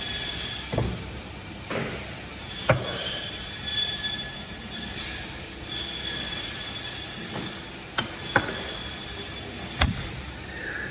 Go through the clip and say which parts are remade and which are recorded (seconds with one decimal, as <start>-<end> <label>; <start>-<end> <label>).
0.0-2.3 recorded; 2.3-5.0 remade; 5.0-10.9 recorded